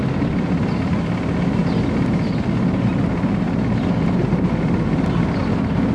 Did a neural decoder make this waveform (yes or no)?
no